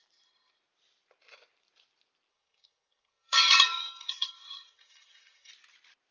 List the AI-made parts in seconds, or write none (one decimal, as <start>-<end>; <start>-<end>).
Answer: 2.3-5.5